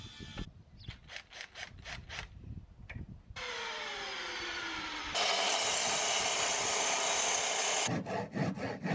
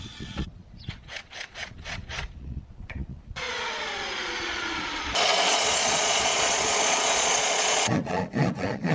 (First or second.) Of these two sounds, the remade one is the second